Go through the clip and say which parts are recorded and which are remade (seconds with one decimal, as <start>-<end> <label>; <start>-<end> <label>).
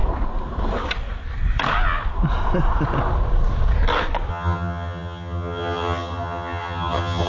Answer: 0.0-4.3 recorded; 4.3-7.3 remade